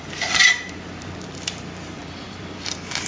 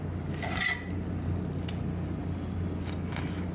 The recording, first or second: second